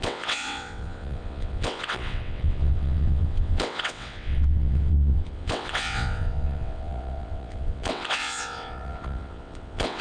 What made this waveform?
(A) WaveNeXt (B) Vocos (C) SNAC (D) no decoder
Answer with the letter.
A